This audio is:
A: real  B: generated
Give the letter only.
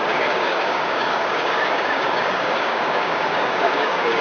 B